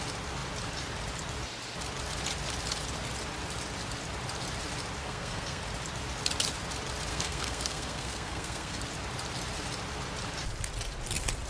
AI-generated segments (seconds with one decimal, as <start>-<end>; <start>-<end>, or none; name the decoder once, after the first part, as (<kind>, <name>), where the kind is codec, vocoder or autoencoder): 5.0-5.6 (codec, SNAC); 7.1-8.8